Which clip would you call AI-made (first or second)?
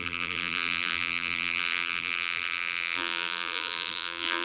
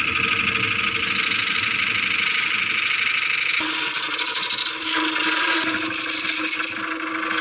first